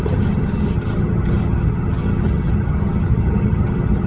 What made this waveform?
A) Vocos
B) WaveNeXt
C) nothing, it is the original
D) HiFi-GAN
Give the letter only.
D